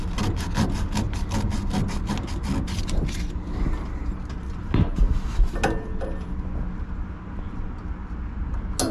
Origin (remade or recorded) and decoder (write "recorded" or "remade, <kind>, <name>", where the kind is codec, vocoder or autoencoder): recorded